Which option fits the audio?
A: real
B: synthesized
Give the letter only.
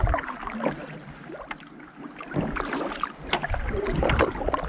A